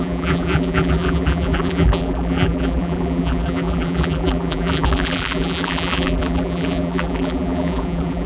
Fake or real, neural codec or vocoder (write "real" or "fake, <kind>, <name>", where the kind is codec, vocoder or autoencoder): fake, vocoder, BigVGAN v2